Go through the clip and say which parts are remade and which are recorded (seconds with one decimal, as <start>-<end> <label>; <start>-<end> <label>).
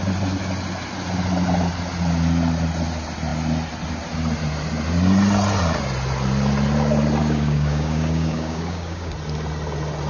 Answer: 0.0-7.2 recorded; 7.2-9.1 remade; 9.1-10.1 recorded